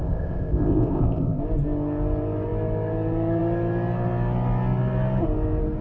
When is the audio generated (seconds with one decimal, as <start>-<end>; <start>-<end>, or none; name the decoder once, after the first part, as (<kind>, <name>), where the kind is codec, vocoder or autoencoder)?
0.0-1.4 (codec, ZipCodec)